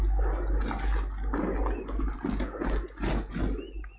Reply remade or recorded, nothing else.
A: recorded